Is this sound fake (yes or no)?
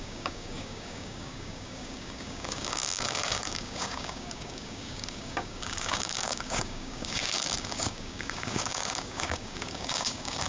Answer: yes